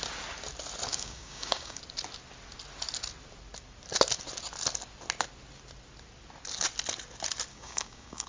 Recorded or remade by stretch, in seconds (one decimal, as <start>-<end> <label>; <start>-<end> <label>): 0.0-0.9 recorded; 0.9-1.8 remade; 1.8-7.5 recorded; 7.5-8.3 remade